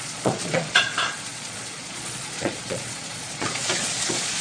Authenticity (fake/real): fake